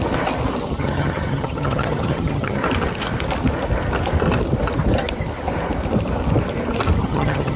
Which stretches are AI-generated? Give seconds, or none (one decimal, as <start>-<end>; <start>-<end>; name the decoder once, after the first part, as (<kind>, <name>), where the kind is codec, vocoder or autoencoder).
0.7-2.6 (vocoder, HiFi-GAN); 7.0-7.6